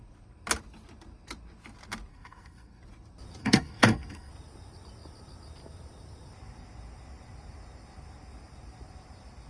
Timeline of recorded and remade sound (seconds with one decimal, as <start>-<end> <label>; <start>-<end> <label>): 0.0-2.1 recorded; 2.1-2.8 remade; 2.8-3.4 recorded; 3.4-4.3 remade; 4.3-9.5 recorded